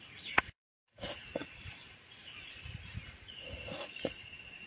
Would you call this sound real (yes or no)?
no